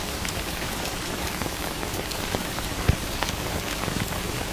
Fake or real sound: fake